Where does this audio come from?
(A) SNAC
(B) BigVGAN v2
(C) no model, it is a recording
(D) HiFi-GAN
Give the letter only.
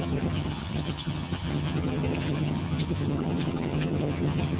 D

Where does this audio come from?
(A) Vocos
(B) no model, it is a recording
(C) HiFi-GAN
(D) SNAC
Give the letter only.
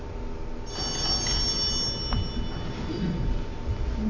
B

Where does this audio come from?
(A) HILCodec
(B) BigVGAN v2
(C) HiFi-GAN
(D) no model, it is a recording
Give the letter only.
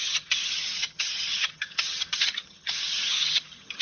C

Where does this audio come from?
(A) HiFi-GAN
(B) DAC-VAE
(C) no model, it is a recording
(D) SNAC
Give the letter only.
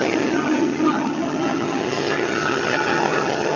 A